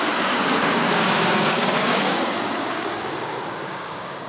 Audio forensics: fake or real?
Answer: fake